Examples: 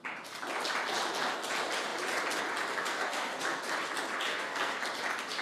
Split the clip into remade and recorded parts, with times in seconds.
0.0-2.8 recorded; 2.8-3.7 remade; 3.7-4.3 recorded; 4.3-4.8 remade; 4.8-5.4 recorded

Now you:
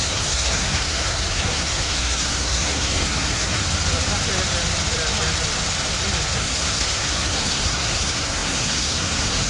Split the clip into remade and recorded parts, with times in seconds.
0.0-3.6 remade; 3.6-6.3 recorded; 6.3-9.5 remade

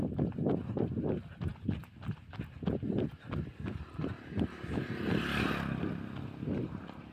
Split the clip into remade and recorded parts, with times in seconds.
0.0-7.1 recorded

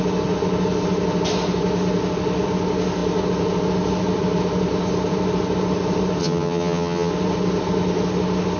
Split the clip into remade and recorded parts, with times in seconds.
0.0-6.2 recorded; 6.2-7.1 remade; 7.1-8.6 recorded

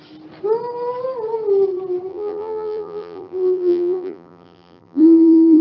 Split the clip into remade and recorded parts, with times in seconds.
0.0-2.1 recorded; 2.1-5.6 remade